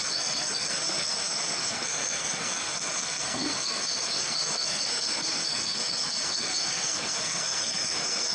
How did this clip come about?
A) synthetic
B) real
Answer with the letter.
A